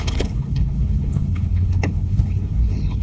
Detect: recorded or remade remade